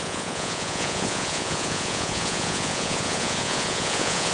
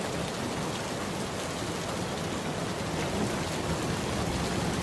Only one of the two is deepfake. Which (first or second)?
first